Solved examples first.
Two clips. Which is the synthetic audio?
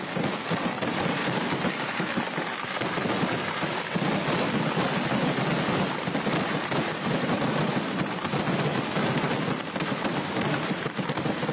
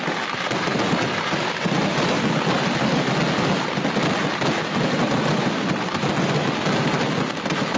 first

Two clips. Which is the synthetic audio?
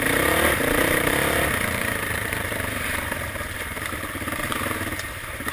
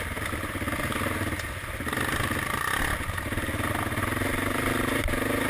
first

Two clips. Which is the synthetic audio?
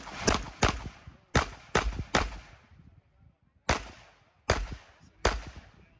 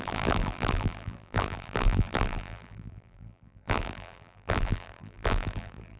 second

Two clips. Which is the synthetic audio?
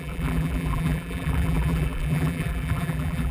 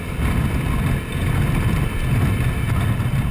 first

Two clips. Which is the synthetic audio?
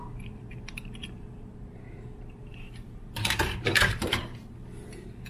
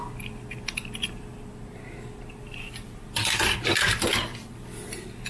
first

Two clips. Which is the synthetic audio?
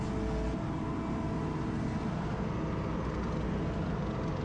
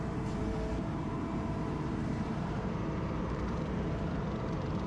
second